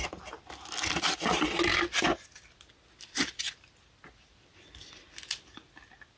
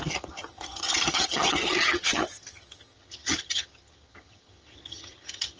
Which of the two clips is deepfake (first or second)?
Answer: second